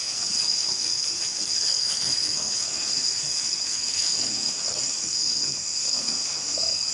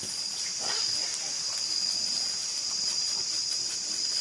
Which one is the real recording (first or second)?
second